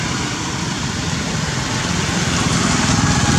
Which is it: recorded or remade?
recorded